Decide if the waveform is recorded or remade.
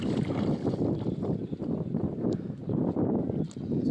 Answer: recorded